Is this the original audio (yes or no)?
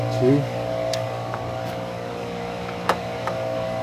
no